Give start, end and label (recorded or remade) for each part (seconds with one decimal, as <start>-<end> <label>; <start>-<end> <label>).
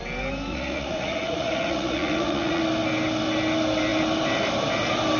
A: 0.0-0.5 recorded; 0.5-2.6 remade; 2.6-5.2 recorded